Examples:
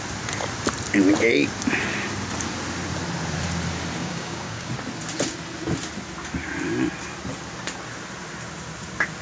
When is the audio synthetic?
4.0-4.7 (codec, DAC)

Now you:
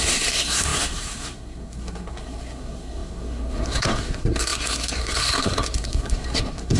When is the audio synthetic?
0.0-6.8 (codec, SNAC)

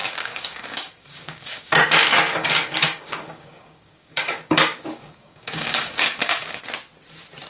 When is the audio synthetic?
0.0-1.7 (codec, DAC); 2.1-6.6

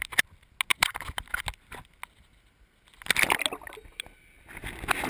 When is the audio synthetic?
none

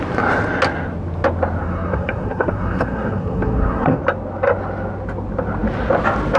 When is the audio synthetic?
1.6-4.0 (codec, SNAC)

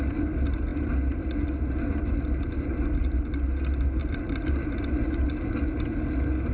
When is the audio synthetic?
none

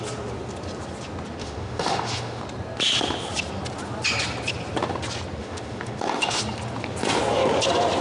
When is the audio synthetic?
1.4-2.4 (autoencoder, DAC-VAE); 5.4-6.4